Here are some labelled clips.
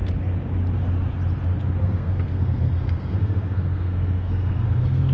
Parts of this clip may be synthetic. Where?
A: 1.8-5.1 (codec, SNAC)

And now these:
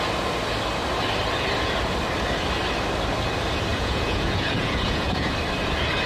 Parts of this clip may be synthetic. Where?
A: 3.7-5.3 (vocoder, Vocos)

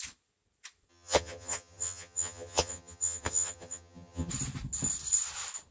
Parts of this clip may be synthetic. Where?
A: 0.9-4.3 (vocoder, HiFi-GAN)

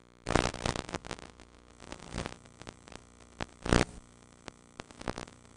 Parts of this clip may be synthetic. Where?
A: 0.0-1.0 (vocoder, BigVGAN v2); 1.9-3.0; 3.5-5.6

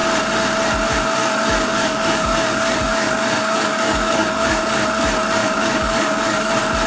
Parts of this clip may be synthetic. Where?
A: 1.2-4.6 (codec, DAC); 5.4-6.5

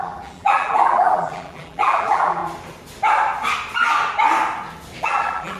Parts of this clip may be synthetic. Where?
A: 0.0-2.4 (vocoder, BigVGAN v2); 5.0-5.6

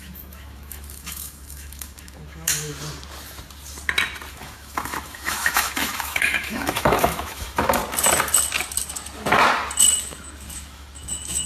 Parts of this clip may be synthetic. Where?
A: 0.0-2.7 (autoencoder, DAC-VAE); 4.3-7.8; 10.0-11.5